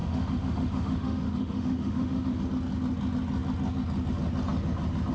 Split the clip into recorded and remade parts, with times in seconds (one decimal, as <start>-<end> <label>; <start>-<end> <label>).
0.0-2.4 remade; 2.4-5.1 recorded